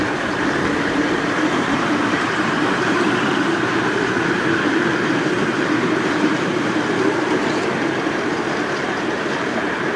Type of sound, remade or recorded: remade